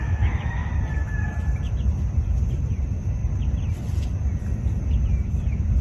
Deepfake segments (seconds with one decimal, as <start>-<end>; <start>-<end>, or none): 0.0-0.7